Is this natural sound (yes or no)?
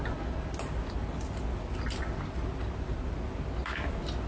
yes